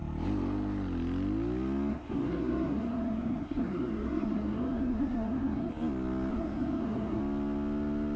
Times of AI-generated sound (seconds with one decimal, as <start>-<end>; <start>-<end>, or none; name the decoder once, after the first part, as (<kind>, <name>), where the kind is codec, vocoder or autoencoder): 1.9-5.7 (codec, SNAC); 6.3-7.2